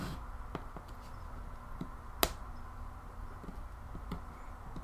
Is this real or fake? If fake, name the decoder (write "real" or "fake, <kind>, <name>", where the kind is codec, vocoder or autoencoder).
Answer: real